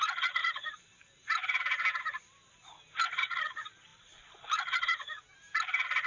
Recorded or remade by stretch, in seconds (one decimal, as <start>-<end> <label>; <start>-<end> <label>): 0.0-0.4 recorded; 0.4-2.5 remade; 2.5-6.1 recorded